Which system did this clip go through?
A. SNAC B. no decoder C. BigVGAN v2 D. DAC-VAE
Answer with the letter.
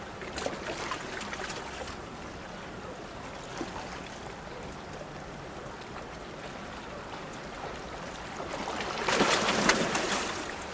B